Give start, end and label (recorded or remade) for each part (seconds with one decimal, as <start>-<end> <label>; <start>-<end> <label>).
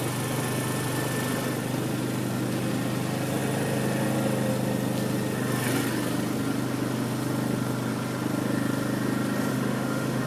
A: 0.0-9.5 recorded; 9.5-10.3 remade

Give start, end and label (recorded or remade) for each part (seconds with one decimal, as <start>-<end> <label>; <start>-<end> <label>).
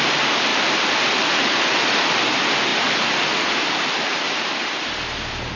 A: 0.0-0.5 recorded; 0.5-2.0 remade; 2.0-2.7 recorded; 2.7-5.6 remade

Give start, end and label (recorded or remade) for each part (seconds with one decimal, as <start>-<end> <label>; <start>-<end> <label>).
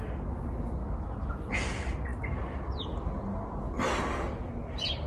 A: 0.0-0.8 recorded; 0.8-1.3 remade; 1.3-5.1 recorded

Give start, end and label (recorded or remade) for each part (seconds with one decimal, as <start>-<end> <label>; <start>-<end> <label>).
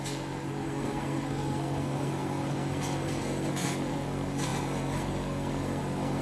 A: 0.0-6.2 remade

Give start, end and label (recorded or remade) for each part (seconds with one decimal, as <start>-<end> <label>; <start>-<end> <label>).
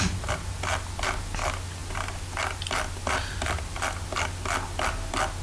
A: 0.0-5.4 recorded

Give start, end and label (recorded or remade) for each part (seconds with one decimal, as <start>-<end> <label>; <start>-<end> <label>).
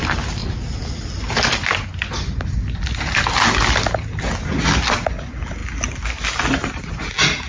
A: 0.0-7.5 recorded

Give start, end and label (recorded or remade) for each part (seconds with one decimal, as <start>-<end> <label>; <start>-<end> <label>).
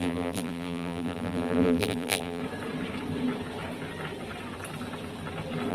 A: 0.0-2.4 remade; 2.4-5.7 recorded